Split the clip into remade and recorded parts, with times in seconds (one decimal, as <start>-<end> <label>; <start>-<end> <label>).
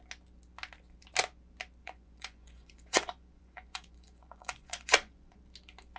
0.0-1.8 recorded; 1.8-5.4 remade; 5.4-6.0 recorded